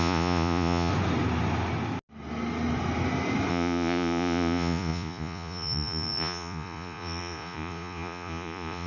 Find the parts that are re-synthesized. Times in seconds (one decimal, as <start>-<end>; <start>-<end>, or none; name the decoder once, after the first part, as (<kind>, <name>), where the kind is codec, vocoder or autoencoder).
0.0-0.9 (vocoder, Vocos); 3.5-8.9